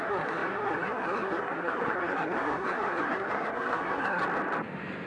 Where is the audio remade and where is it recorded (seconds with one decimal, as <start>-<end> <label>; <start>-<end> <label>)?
0.0-4.2 remade; 4.2-5.1 recorded